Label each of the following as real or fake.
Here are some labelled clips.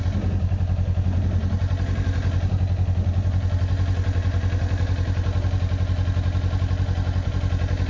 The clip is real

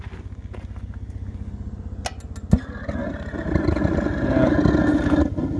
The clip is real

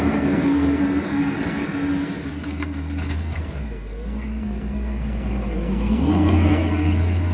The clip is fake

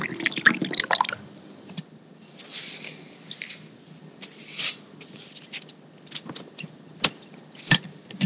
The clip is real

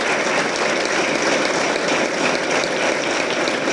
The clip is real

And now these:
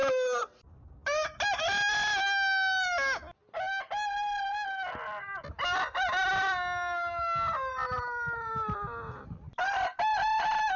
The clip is real